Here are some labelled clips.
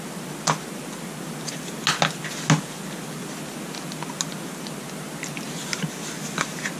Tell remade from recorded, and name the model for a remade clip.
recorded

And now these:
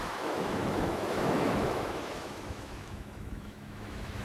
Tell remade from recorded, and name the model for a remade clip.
remade, autoencoder, DAC-VAE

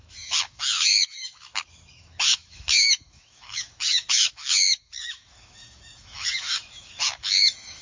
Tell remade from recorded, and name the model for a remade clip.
remade, autoencoder, DAC-VAE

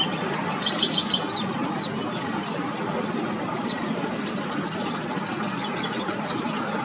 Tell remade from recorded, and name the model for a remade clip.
recorded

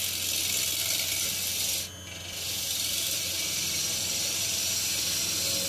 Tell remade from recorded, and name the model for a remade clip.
recorded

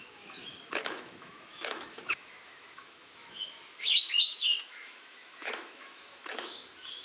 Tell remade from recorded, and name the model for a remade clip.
remade, autoencoder, DAC-VAE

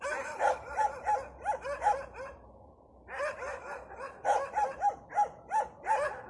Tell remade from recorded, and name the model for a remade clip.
recorded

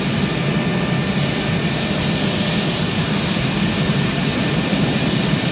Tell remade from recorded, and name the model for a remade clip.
recorded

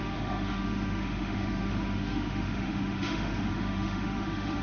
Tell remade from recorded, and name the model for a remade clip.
remade, autoencoder, DAC-VAE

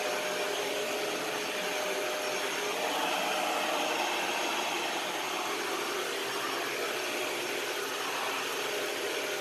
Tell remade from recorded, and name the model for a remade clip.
recorded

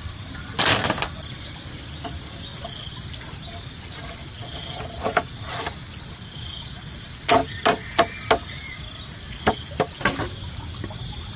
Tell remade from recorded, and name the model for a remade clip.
recorded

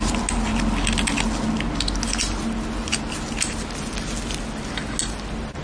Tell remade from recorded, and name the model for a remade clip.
recorded